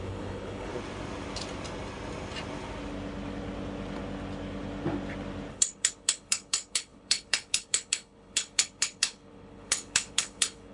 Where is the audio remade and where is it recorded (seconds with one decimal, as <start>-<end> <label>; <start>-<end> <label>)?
0.0-0.7 remade; 0.7-5.5 recorded; 5.5-10.7 remade